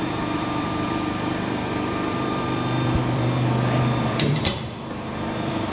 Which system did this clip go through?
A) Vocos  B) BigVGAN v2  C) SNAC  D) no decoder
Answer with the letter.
B